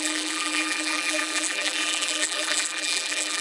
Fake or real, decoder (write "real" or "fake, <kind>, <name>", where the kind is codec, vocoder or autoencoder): fake, vocoder, BigVGAN v2